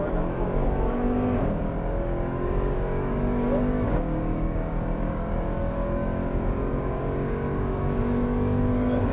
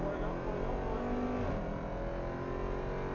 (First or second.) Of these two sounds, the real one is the second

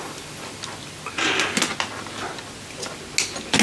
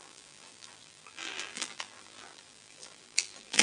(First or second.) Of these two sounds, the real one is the first